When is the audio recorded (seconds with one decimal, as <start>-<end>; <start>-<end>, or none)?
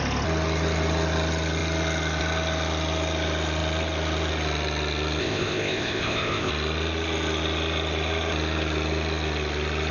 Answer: 0.0-5.2; 6.5-9.9